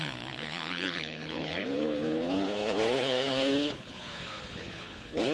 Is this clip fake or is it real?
fake